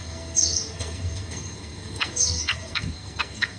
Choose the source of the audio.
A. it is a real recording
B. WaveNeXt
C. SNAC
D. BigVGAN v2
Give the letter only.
C